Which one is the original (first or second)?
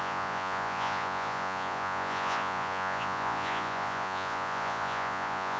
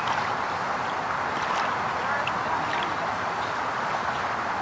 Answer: second